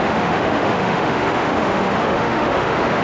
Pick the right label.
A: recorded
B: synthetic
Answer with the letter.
B